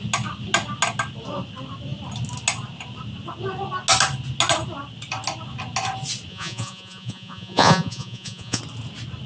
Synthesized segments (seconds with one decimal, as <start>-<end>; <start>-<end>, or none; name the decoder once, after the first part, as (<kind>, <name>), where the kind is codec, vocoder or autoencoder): 6.3-8.6 (vocoder, Vocos)